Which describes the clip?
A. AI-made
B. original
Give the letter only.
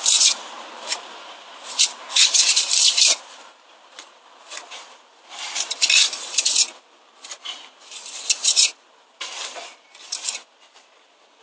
A